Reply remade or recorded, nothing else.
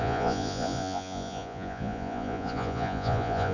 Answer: remade